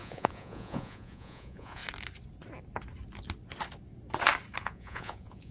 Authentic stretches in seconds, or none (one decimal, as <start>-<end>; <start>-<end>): 1.8-4.6

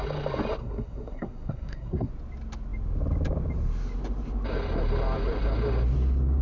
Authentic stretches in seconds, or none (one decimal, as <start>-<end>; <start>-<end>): 0.0-0.6; 2.1-6.4